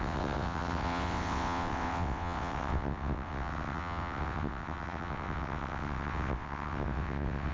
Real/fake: fake